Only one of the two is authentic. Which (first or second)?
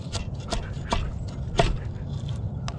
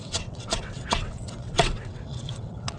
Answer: first